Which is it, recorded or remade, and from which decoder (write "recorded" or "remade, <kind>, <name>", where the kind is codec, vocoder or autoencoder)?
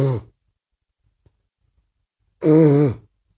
recorded